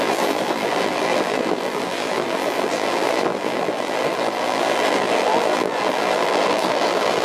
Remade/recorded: remade